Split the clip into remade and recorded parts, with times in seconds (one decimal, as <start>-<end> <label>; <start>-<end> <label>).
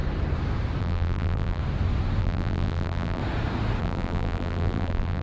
0.0-0.8 recorded; 0.8-1.6 remade; 1.6-2.2 recorded; 2.2-3.2 remade; 3.2-3.8 recorded; 3.8-5.2 remade